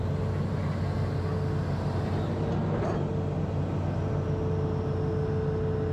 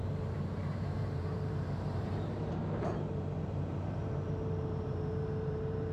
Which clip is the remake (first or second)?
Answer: second